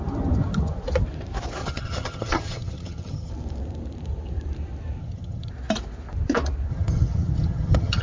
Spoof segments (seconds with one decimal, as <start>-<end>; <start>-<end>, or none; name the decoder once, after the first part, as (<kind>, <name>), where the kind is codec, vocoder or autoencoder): 1.6-3.3 (vocoder, HiFi-GAN); 5.0-5.5; 6.7-8.0